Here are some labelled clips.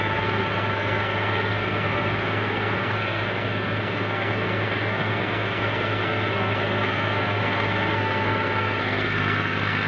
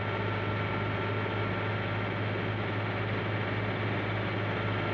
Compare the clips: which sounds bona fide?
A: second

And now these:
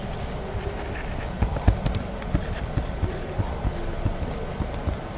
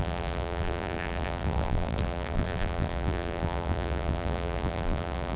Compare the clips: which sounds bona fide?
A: first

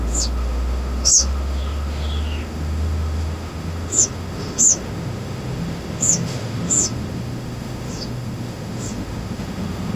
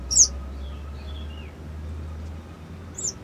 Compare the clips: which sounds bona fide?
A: second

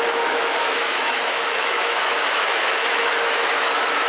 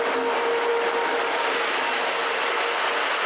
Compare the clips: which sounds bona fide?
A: second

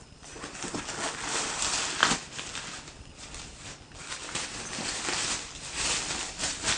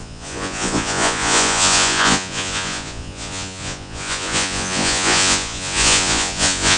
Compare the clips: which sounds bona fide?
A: first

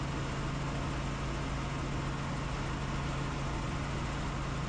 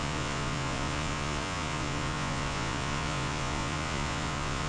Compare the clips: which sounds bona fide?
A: first